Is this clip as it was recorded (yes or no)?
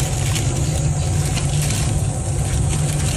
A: yes